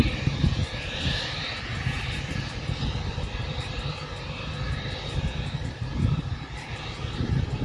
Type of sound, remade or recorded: recorded